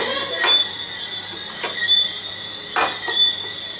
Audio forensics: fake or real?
real